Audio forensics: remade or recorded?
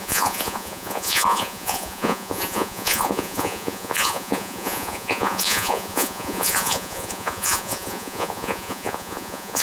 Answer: remade